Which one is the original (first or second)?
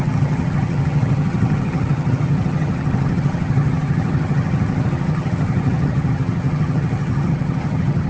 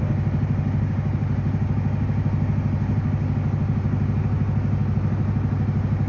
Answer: second